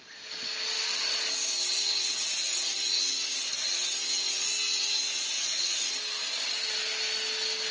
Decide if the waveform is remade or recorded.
recorded